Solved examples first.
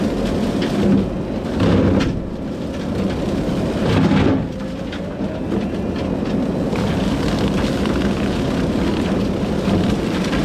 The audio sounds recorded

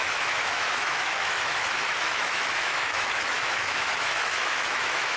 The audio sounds remade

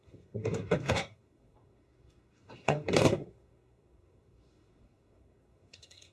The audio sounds remade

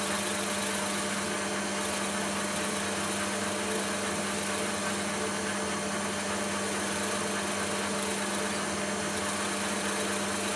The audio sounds recorded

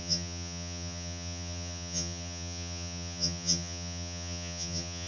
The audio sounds remade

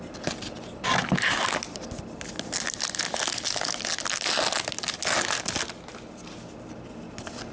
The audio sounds recorded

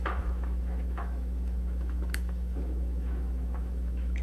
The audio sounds remade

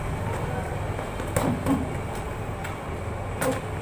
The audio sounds recorded